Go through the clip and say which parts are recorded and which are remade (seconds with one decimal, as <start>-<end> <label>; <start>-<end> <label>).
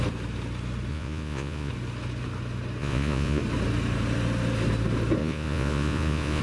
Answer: 0.0-0.9 recorded; 0.9-1.7 remade; 1.7-2.8 recorded; 2.8-3.4 remade; 3.4-5.2 recorded; 5.2-6.4 remade